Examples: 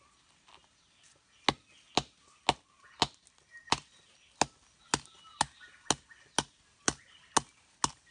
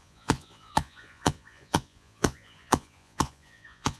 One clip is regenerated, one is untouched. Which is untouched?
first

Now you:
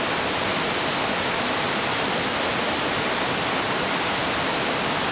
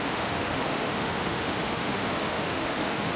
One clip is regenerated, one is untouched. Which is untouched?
first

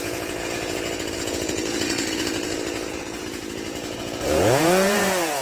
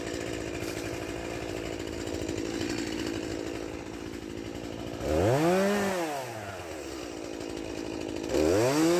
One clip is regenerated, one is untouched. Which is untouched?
second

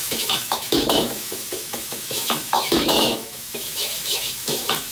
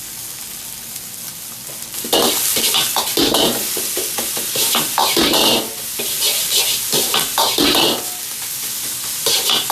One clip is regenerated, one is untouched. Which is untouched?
second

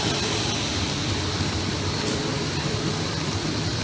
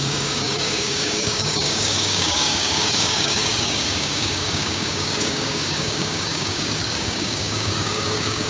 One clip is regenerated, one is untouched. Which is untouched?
first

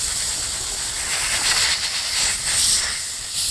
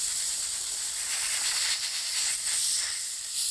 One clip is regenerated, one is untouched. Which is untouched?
first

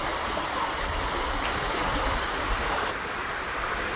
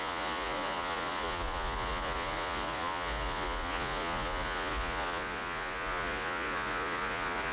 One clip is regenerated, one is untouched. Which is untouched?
first